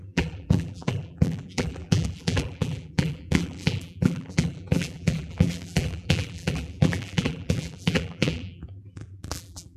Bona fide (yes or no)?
no